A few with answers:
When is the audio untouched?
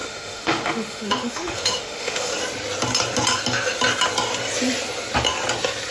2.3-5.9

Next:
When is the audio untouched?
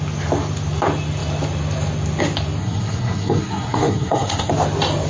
0.0-2.6; 4.5-5.1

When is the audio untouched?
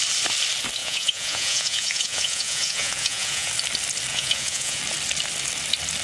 0.0-0.8; 3.5-4.1; 4.8-6.0